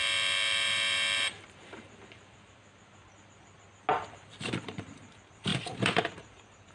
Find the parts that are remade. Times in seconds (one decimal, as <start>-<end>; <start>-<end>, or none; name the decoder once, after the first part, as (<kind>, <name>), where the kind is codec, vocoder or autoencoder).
0.0-2.6 (vocoder, BigVGAN v2); 4.1-6.7